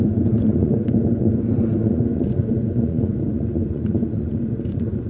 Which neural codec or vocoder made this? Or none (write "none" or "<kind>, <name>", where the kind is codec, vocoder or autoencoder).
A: vocoder, Vocos